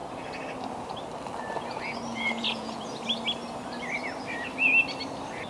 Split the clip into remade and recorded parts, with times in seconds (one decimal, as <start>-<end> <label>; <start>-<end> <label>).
0.0-2.1 recorded; 2.1-2.8 remade; 2.8-5.5 recorded